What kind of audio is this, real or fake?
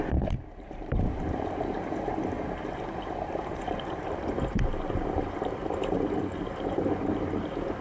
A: fake